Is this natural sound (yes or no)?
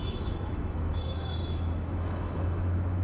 no